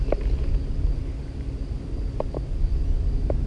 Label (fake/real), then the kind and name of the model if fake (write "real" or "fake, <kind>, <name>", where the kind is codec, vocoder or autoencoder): real